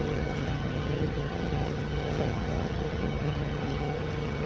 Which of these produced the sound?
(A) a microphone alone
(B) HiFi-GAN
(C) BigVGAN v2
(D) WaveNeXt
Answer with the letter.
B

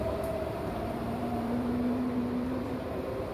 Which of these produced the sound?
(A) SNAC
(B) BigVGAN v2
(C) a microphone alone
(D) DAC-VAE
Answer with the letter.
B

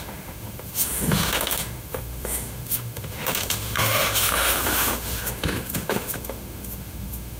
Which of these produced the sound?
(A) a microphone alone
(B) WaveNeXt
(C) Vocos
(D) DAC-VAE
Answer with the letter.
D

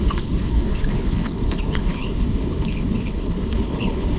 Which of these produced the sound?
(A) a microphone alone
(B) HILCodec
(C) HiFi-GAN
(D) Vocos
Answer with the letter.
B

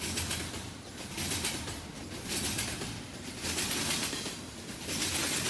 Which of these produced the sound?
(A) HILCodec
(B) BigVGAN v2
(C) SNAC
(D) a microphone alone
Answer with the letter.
D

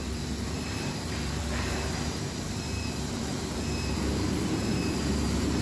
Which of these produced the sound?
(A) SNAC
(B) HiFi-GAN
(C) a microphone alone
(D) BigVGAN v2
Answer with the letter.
D